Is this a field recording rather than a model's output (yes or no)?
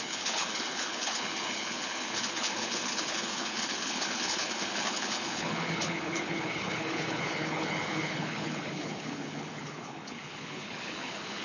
no